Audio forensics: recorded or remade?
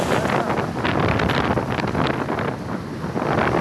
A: recorded